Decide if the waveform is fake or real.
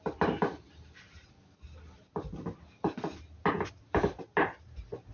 real